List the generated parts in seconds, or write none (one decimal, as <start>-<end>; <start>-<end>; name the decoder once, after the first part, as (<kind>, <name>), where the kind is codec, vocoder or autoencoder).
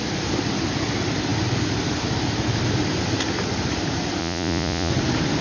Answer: 4.2-4.9 (vocoder, Vocos)